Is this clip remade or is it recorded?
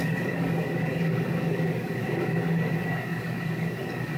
remade